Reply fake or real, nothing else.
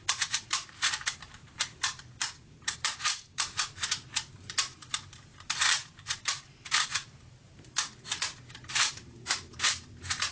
fake